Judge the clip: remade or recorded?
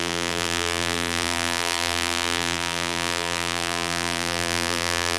remade